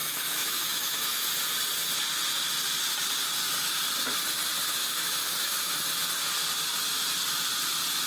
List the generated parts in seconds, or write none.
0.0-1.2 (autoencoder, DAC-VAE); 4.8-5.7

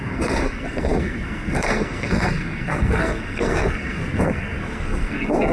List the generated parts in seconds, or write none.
0.0-5.5 (codec, SNAC)

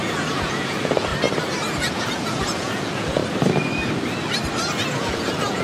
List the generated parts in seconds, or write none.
0.0-1.1 (vocoder, Vocos); 1.8-3.2; 4.9-5.6

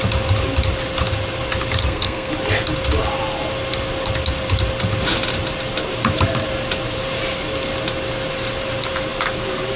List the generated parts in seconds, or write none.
1.8-2.3 (codec, SNAC)

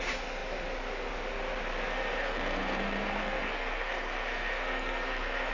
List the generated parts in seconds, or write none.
2.2-5.5 (codec, SNAC)

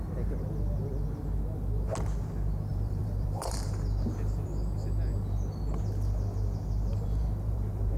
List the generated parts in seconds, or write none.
2.7-4.3 (vocoder, BigVGAN v2); 6.9-8.0

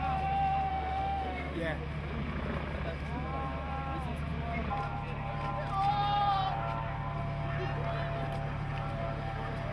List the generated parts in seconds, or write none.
0.7-1.6 (autoencoder, DAC-VAE)